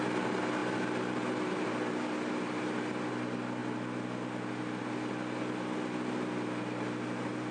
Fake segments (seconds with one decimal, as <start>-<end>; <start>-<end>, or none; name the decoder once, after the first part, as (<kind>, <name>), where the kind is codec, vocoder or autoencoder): none